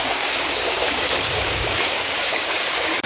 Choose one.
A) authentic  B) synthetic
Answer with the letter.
B